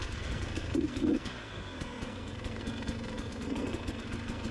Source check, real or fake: fake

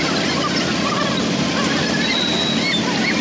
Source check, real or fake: real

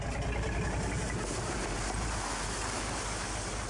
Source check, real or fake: real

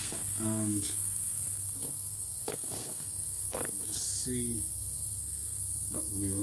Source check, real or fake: fake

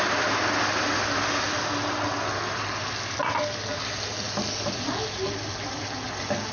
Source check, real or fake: real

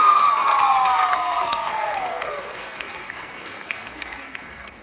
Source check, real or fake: fake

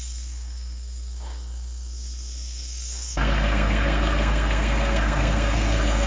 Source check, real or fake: fake